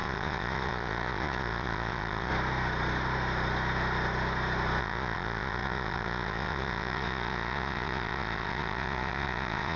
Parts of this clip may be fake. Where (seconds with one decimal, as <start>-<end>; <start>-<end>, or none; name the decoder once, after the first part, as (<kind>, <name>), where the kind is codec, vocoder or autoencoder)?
0.0-2.3 (vocoder, Vocos); 4.8-9.8